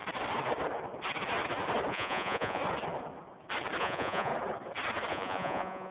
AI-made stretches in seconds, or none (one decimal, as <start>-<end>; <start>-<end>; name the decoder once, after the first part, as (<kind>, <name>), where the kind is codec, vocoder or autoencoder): 1.9-2.6 (vocoder, Vocos); 3.8-4.3; 5.1-5.9